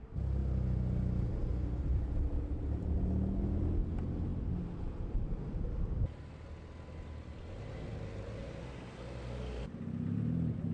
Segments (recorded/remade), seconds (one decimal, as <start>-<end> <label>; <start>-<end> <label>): 0.0-10.7 recorded